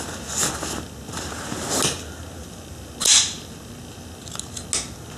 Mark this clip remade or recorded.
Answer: recorded